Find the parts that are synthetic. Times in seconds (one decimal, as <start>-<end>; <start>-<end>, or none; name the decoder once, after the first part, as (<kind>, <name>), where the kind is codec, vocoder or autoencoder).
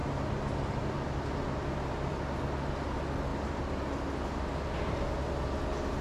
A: none